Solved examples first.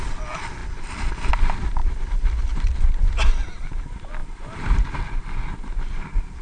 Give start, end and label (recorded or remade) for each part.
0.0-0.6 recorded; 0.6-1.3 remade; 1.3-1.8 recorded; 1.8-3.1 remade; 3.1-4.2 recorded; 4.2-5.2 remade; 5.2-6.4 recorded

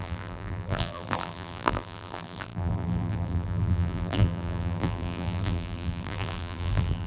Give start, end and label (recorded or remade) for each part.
0.0-7.1 remade